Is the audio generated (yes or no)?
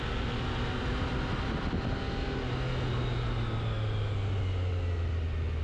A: no